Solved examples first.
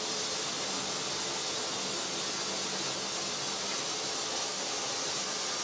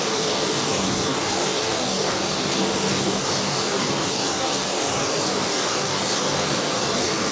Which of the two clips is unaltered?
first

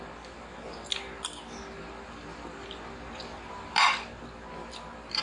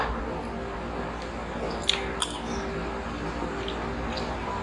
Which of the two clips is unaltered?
second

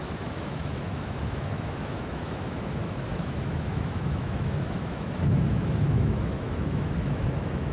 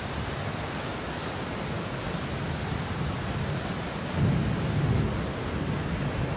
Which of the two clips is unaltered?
second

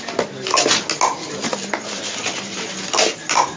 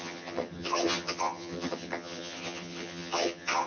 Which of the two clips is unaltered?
first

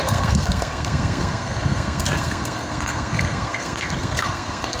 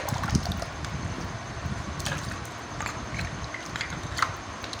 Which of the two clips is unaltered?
second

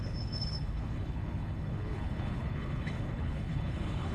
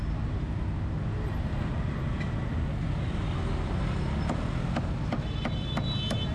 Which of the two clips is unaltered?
second